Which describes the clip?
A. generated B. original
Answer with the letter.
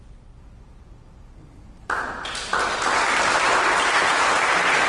B